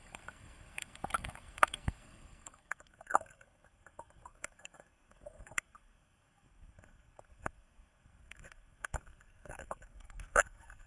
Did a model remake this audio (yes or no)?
yes